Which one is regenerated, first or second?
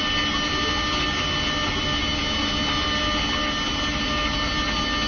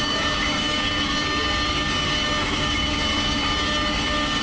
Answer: second